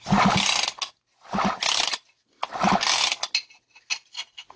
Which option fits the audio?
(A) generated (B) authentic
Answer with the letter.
B